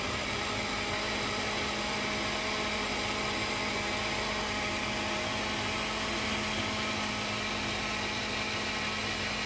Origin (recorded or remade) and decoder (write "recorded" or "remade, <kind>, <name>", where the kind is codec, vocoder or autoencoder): recorded